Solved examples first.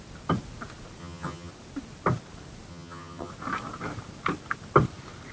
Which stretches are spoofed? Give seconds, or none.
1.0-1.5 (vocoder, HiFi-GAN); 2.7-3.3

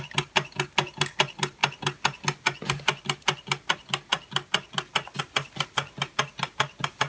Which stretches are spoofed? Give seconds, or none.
none

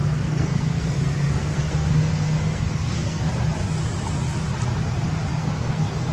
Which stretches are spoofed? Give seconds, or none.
0.0-3.3 (codec, SNAC); 5.3-6.1

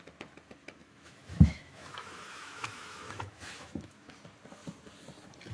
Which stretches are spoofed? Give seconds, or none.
0.8-4.1 (autoencoder, DAC-VAE)

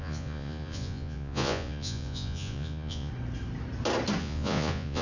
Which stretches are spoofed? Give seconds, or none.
0.0-3.1 (vocoder, Vocos); 4.2-5.0